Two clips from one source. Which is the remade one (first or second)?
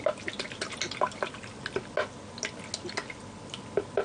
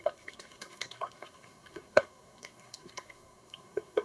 second